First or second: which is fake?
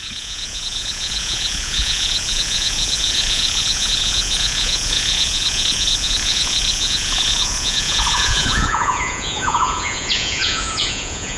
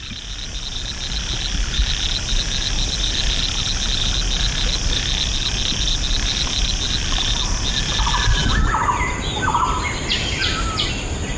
first